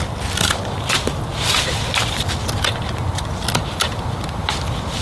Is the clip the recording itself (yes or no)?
yes